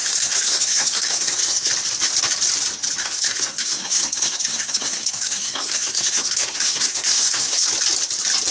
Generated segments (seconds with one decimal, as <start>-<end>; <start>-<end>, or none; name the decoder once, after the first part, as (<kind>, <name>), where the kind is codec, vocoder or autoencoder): 0.0-1.7 (codec, SNAC); 3.0-7.7